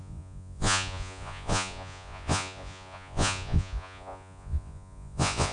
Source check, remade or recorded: remade